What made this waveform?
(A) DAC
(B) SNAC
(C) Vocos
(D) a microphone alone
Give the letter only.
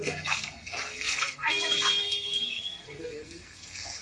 B